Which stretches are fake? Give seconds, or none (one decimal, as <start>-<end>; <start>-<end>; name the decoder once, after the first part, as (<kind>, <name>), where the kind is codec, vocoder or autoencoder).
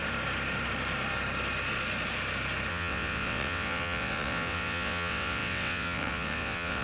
2.7-6.8 (vocoder, WaveNeXt)